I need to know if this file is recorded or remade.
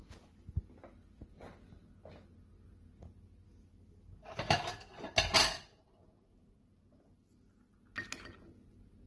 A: recorded